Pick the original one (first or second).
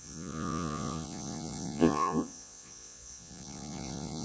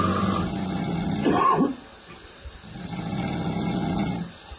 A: second